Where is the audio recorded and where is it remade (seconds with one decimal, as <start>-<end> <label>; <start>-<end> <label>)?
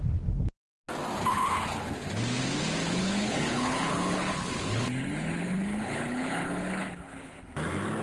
0.0-1.3 recorded; 1.3-2.1 remade; 2.1-2.8 recorded; 2.8-7.4 remade; 7.4-8.0 recorded